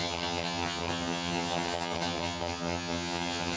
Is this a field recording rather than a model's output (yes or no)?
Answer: no